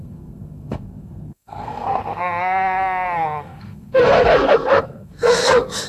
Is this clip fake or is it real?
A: fake